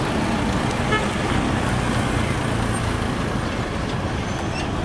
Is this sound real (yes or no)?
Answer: yes